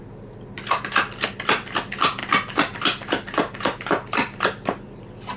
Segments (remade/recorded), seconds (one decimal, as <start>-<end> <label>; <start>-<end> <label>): 0.0-5.4 recorded

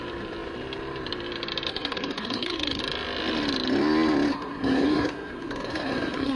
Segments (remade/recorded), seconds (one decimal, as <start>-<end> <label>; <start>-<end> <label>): 0.0-1.7 recorded; 1.7-2.8 remade; 2.8-4.3 recorded; 4.3-6.4 remade

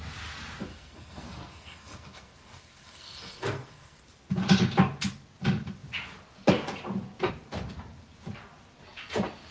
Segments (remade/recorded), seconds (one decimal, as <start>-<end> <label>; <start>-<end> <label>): 0.0-0.7 recorded; 0.7-4.0 remade; 4.0-9.5 recorded